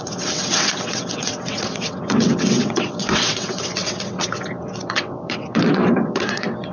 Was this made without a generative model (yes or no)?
no